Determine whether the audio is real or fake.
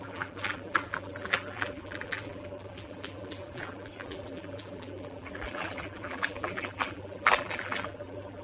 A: fake